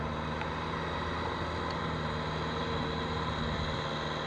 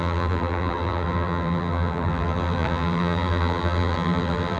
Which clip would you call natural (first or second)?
first